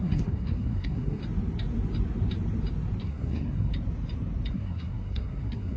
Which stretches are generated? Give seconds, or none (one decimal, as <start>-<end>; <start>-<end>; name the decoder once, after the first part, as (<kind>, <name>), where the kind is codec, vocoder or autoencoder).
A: 0.0-1.2 (codec, SNAC); 3.0-3.7; 4.5-5.8